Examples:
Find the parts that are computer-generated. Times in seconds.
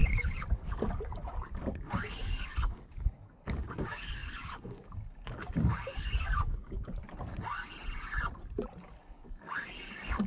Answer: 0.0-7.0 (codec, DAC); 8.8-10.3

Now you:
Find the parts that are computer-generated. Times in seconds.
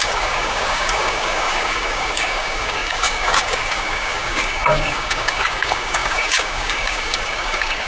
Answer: 0.0-7.9 (codec, DAC)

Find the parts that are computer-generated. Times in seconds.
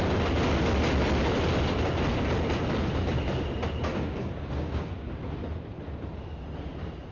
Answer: 3.9-5.4 (codec, DAC)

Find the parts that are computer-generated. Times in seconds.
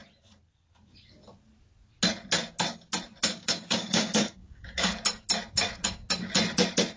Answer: 3.3-5.0 (codec, DAC)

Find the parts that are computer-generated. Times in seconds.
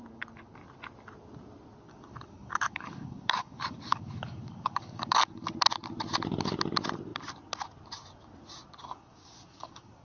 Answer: 1.9-5.5 (codec, DAC); 8.8-10.0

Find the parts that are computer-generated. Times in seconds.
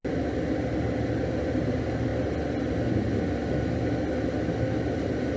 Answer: none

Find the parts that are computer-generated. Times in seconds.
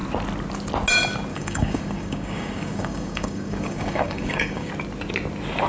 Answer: 1.3-4.7 (codec, DAC)